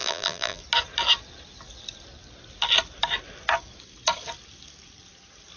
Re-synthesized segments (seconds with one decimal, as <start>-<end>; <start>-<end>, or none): 0.0-0.6